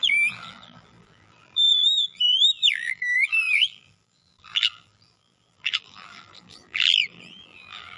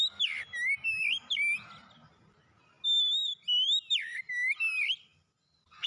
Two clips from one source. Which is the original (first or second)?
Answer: second